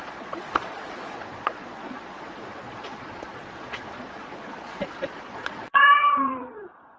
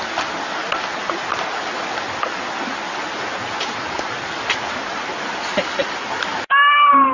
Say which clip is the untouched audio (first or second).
second